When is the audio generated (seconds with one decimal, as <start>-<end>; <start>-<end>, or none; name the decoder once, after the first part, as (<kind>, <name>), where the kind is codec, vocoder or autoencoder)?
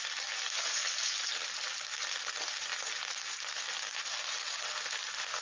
none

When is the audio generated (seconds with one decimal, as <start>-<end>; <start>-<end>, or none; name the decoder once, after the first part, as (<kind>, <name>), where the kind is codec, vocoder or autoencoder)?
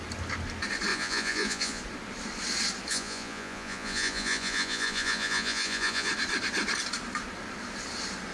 0.9-1.8 (vocoder, Vocos); 2.9-6.1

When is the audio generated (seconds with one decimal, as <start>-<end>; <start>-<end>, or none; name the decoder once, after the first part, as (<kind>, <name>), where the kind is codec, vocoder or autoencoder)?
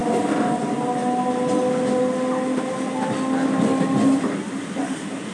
none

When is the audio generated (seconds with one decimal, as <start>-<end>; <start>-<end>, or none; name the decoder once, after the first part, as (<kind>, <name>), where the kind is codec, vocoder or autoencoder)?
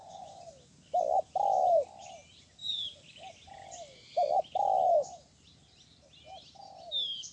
0.0-0.5 (vocoder, Vocos)